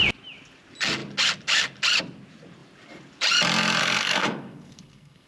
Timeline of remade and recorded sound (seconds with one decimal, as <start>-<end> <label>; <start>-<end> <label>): 0.0-3.8 recorded; 3.8-5.3 remade